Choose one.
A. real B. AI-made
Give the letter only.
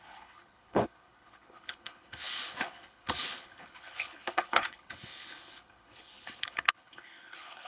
B